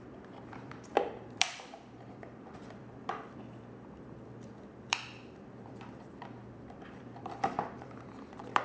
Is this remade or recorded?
remade